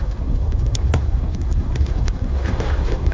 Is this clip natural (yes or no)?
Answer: no